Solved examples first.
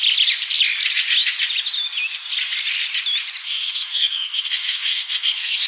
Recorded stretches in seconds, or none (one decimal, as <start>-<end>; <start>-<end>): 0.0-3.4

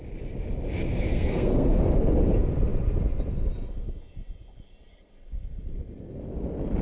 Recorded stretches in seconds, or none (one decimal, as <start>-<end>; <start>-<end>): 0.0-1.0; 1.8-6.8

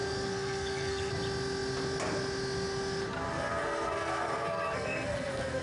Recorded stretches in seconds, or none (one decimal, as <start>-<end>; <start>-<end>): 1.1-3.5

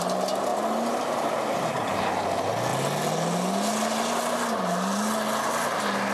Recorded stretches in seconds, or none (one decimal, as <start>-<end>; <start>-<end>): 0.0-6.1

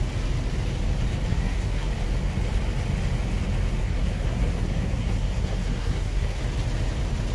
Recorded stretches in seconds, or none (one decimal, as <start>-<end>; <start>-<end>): 0.0-1.3; 1.9-3.8; 6.4-7.3